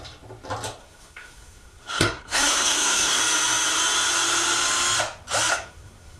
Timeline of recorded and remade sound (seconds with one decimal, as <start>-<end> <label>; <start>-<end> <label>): 0.0-0.8 recorded; 0.8-3.2 remade; 3.2-5.5 recorded; 5.5-6.2 remade